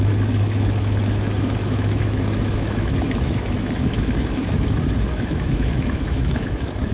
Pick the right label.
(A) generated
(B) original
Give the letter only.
A